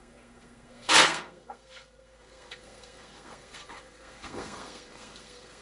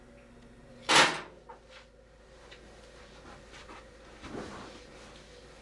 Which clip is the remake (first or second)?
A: first